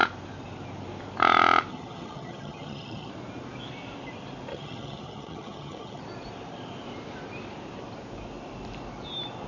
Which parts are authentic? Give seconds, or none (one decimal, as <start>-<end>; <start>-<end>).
0.0-1.7; 3.1-4.5; 6.0-9.5